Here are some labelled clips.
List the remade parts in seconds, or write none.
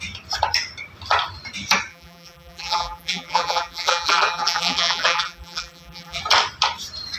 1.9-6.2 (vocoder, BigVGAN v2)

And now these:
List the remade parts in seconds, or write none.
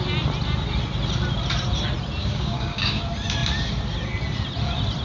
2.2-3.0 (codec, DAC)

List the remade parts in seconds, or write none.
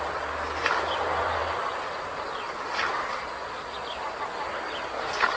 none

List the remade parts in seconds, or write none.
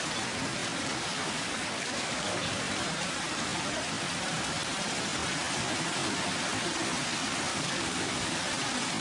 0.9-2.5 (codec, DAC); 7.5-8.4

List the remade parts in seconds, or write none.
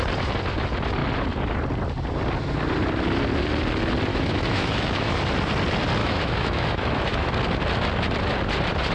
4.1-5.2 (autoencoder, DAC-VAE); 6.0-7.3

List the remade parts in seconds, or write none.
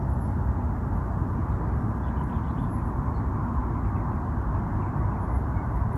none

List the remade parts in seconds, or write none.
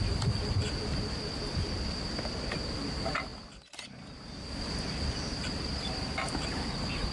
0.0-3.3 (vocoder, BigVGAN v2); 5.2-7.1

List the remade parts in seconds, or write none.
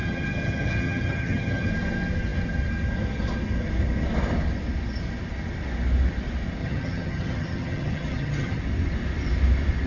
0.0-1.7 (vocoder, HiFi-GAN); 6.6-8.6